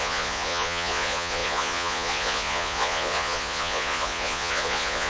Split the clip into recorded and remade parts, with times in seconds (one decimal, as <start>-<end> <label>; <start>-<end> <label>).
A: 0.0-5.1 remade